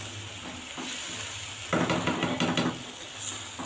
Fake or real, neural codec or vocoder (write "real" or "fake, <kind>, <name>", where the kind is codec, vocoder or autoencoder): real